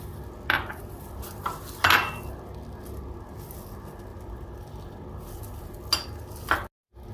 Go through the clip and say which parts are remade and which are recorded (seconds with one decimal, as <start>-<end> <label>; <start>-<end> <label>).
0.0-4.1 recorded; 4.1-5.6 remade; 5.6-7.1 recorded